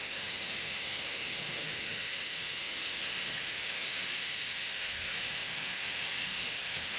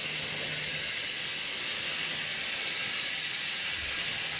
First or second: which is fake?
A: first